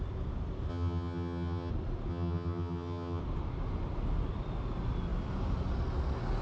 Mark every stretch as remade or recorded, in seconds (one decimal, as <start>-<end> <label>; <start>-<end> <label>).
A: 0.0-0.7 recorded; 0.7-1.7 remade; 1.7-2.1 recorded; 2.1-3.2 remade; 3.2-6.4 recorded